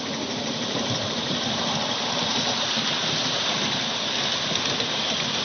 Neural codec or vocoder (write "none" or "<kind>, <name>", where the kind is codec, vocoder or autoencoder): none